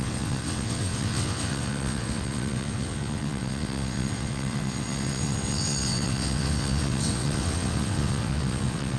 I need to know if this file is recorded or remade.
remade